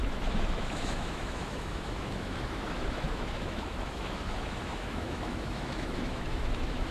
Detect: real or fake fake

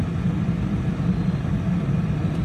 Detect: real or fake real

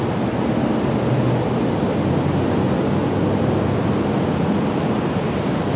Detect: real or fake real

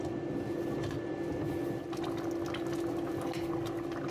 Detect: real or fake real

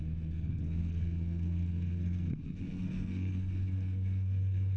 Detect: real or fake fake